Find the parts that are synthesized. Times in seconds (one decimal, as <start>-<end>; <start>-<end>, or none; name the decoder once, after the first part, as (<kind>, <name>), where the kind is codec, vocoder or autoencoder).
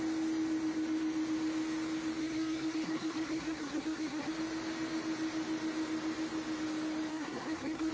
2.2-4.3 (codec, SNAC); 7.1-7.9